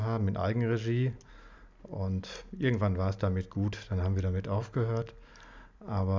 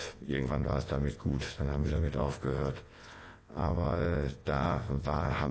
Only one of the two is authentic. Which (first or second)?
first